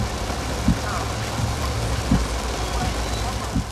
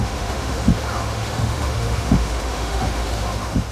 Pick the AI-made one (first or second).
second